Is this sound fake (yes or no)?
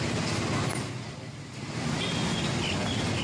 no